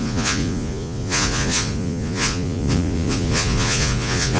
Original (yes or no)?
no